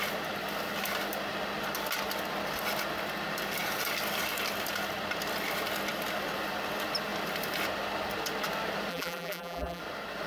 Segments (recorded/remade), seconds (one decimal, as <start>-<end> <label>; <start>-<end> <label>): 0.0-8.9 recorded; 8.9-9.8 remade; 9.8-10.3 recorded